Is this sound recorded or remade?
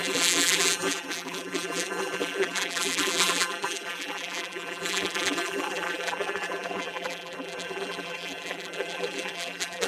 remade